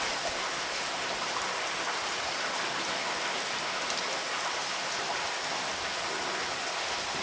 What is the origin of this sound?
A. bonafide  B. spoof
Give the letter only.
A